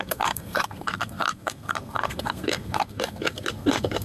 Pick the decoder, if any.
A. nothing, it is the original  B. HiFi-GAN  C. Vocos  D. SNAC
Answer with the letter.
D